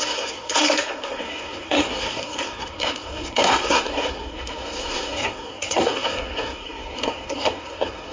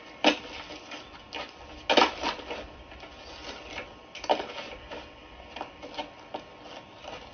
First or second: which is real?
second